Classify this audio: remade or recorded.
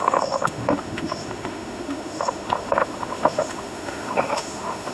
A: remade